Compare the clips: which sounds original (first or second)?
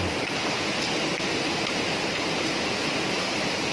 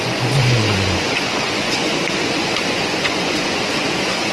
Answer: first